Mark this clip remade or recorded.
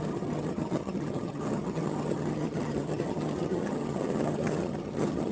remade